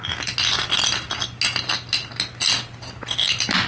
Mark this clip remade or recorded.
recorded